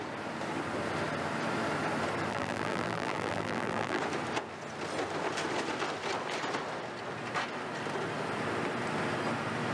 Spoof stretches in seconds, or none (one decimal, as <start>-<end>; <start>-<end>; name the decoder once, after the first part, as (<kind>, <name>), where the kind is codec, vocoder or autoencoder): 2.3-4.0 (vocoder, BigVGAN v2)